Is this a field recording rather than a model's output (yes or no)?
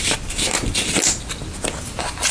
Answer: no